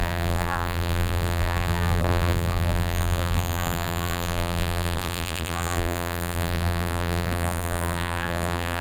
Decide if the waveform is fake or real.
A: fake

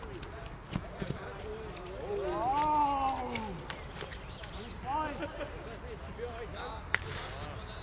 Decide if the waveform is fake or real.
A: real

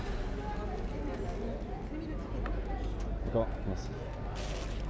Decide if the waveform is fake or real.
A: real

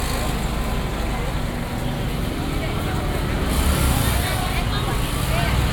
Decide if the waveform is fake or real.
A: real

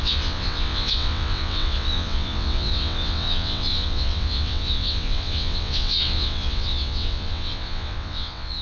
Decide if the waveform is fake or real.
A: fake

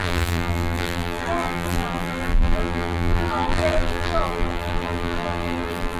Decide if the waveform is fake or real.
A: fake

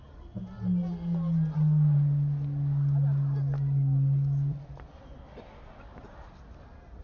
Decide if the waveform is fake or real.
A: real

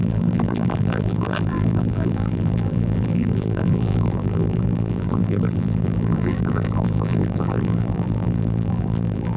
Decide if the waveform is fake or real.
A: fake